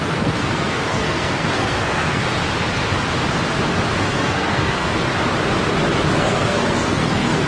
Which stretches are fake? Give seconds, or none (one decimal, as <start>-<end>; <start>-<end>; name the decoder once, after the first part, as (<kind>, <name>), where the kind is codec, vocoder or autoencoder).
0.0-2.2 (codec, SNAC); 4.0-5.1; 6.2-7.5